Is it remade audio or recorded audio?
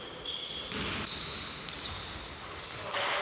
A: recorded